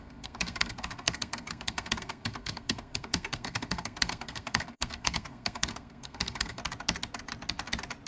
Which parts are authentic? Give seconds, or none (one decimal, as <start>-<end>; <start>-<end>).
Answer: 6.6-8.1